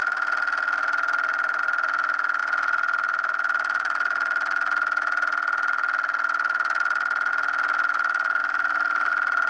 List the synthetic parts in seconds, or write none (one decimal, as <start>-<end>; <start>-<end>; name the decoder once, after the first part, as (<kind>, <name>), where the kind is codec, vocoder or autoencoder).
8.4-9.1 (vocoder, BigVGAN v2)